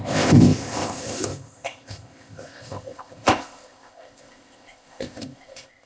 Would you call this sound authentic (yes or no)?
no